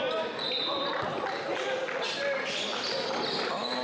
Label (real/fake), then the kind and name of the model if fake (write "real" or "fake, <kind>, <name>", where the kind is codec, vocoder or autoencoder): real